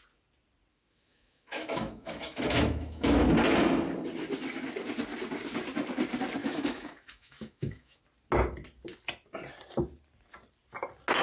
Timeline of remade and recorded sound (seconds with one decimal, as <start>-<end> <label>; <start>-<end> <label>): 0.0-0.7 recorded; 0.7-3.3 remade; 3.3-6.4 recorded; 6.4-8.0 remade; 8.0-11.2 recorded